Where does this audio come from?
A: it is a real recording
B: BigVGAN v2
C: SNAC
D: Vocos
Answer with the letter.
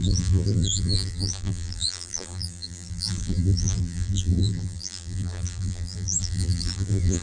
B